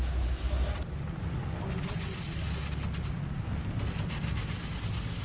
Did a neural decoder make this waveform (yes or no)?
no